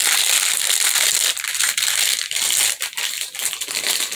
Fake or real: real